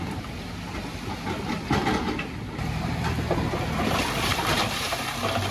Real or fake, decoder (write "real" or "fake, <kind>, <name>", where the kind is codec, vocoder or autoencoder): real